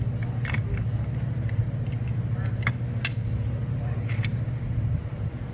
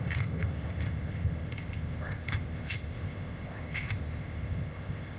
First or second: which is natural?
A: first